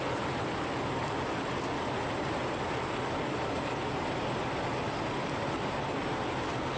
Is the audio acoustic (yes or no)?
yes